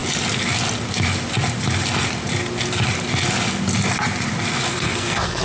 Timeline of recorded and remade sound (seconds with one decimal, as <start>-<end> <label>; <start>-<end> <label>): 0.0-4.7 recorded; 4.7-5.4 remade